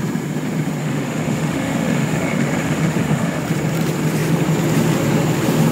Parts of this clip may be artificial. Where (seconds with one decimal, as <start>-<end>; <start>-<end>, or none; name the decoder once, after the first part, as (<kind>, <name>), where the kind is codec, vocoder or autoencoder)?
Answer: 0.8-3.4 (autoencoder, DAC-VAE)